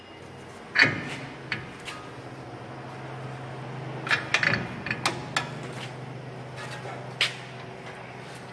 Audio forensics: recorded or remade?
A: recorded